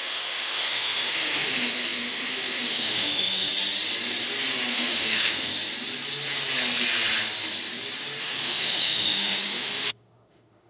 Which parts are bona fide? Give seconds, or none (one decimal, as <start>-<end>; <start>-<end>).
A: 3.5-4.7; 5.5-8.2